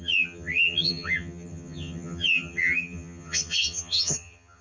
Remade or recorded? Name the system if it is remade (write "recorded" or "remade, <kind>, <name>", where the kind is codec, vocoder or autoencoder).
remade, vocoder, HiFi-GAN